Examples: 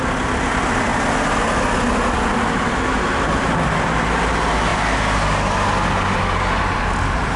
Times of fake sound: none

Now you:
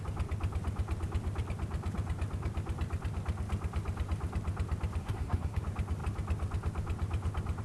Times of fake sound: 5.0-5.6 (codec, SNAC)